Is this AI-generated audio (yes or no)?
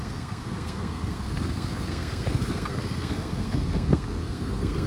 yes